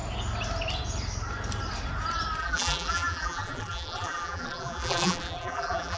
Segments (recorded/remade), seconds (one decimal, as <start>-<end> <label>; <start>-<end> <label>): 0.0-2.4 recorded; 2.4-6.0 remade